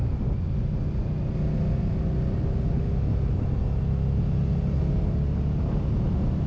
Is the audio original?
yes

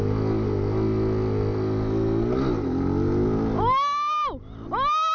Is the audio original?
yes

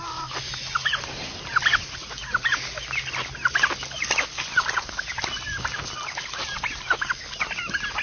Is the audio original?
yes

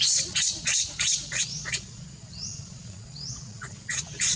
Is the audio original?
no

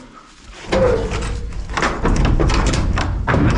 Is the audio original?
yes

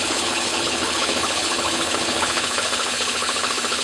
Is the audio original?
no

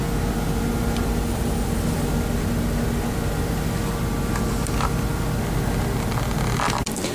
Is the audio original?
yes